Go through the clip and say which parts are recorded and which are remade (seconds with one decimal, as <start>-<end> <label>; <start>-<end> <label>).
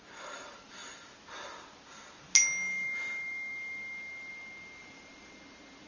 0.0-4.8 recorded; 4.8-5.3 remade; 5.3-5.9 recorded